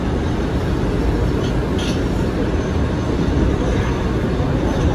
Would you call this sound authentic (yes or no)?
yes